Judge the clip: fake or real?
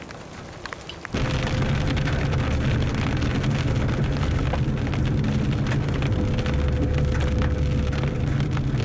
real